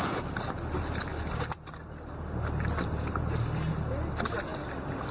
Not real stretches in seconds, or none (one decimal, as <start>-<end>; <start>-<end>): none